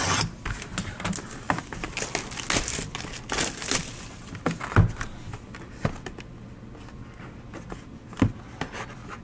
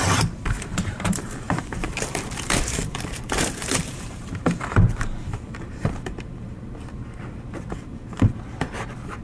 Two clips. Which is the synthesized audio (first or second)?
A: second